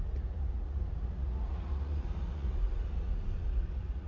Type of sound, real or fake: fake